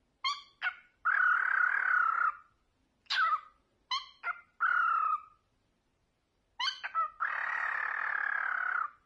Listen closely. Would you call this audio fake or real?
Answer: real